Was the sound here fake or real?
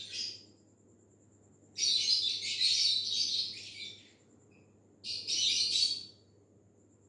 real